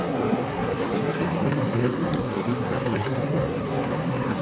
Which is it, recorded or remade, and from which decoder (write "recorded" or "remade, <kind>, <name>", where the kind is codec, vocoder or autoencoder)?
remade, codec, SNAC